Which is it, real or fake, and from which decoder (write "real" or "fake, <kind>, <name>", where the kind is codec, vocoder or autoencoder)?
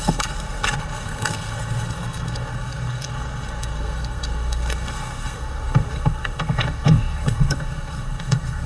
fake, codec, SNAC